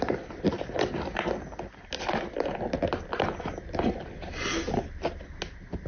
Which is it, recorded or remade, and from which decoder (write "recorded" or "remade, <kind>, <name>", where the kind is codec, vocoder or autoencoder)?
recorded